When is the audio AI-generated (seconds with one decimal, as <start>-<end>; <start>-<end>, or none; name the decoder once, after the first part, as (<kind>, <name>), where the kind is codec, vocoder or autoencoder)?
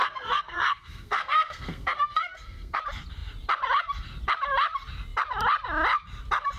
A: 0.0-2.8 (codec, SNAC)